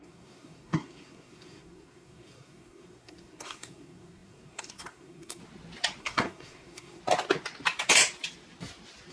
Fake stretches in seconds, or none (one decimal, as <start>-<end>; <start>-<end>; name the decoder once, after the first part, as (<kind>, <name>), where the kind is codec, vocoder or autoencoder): 0.0-5.4 (codec, SNAC); 6.0-7.0